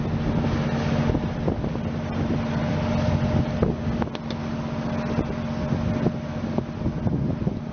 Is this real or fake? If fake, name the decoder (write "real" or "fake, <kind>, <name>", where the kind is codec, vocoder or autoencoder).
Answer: real